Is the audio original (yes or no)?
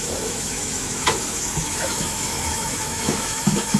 no